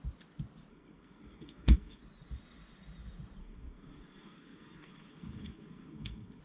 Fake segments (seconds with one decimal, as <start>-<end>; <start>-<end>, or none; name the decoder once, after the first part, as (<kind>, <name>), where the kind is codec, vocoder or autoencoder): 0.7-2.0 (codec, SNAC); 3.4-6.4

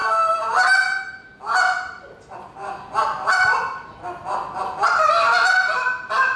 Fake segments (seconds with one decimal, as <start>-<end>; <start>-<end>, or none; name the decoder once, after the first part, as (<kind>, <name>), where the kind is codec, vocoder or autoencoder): none

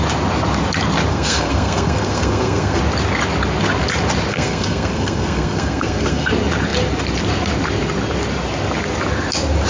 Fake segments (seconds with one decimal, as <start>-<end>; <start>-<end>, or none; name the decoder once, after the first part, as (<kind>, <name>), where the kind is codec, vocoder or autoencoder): 1.1-2.8 (codec, SNAC); 4.3-6.3